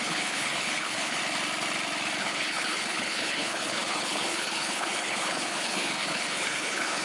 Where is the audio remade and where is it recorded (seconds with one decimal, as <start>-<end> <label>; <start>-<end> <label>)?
0.0-1.2 remade; 1.2-2.2 recorded; 2.2-7.0 remade

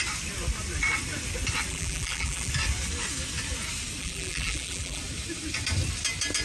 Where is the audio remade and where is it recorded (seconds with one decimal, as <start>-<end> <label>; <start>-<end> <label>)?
0.0-1.7 recorded; 1.7-2.5 remade; 2.5-4.0 recorded; 4.0-5.0 remade; 5.0-6.4 recorded

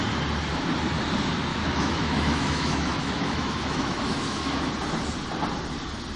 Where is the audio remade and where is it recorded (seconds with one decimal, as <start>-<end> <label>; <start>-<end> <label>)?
0.0-1.5 recorded; 1.5-4.7 remade; 4.7-6.2 recorded